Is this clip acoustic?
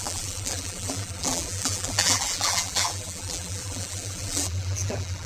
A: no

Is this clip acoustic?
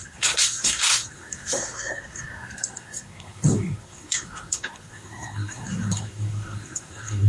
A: no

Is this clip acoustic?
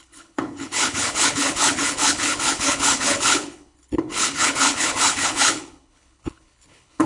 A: no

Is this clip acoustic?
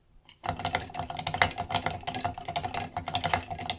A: yes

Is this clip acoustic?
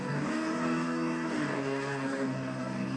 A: no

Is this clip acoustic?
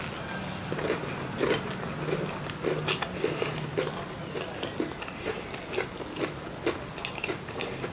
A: yes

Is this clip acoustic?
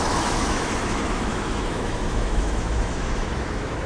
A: no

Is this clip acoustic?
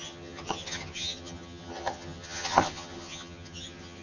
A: no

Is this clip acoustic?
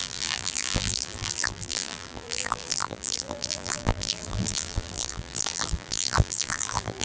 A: no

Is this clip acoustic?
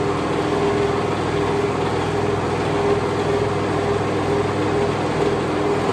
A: yes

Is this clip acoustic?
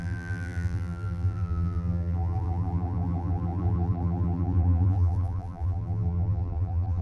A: no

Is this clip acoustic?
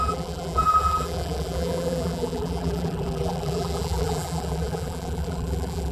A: no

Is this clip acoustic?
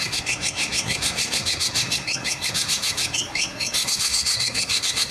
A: no